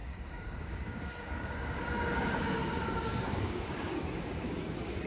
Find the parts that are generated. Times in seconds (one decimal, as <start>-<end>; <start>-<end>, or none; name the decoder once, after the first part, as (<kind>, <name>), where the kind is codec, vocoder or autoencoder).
0.0-5.1 (codec, DAC)

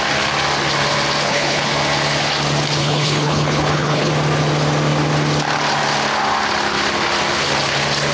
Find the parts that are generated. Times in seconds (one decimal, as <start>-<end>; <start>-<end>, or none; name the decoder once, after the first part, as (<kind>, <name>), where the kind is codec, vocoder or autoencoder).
1.2-1.7 (codec, HILCodec); 2.8-4.1

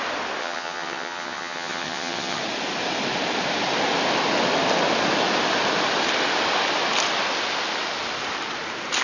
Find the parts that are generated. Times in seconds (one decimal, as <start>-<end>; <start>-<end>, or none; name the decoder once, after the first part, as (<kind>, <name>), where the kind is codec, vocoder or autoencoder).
0.4-2.4 (vocoder, HiFi-GAN)

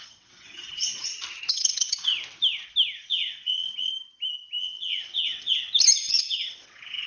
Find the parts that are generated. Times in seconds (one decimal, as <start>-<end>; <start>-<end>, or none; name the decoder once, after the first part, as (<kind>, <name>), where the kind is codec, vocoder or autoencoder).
0.0-0.9 (vocoder, WaveNeXt); 1.5-2.1; 3.1-3.9; 4.6-5.6; 6.1-7.1

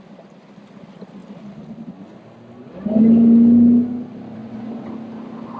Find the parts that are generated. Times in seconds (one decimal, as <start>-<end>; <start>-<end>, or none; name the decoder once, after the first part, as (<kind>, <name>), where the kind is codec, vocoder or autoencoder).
4.4-4.9 (vocoder, WaveNeXt)

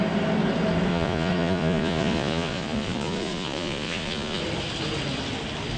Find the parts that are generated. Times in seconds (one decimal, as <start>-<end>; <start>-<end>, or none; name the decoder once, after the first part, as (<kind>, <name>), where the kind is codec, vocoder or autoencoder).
0.9-4.4 (vocoder, Vocos)

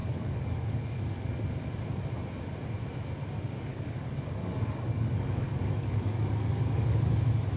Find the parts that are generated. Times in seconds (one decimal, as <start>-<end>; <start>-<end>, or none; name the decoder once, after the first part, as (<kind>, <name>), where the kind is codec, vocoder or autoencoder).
0.0-1.3 (codec, DAC); 3.7-7.1

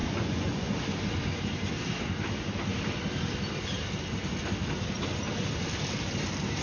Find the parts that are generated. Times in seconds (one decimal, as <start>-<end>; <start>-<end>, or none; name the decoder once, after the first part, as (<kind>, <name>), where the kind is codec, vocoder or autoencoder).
0.0-0.7 (vocoder, Vocos)